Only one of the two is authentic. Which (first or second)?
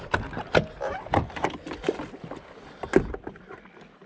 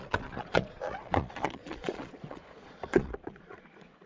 first